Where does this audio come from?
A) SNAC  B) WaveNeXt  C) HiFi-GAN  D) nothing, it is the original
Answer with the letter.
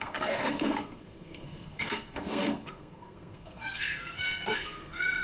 A